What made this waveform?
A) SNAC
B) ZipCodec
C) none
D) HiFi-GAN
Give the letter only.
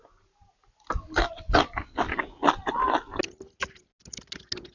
C